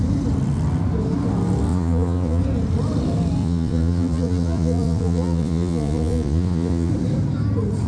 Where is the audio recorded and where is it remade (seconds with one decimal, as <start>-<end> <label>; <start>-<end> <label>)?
0.0-1.7 recorded; 1.7-2.4 remade; 2.4-3.4 recorded; 3.4-6.9 remade; 6.9-7.9 recorded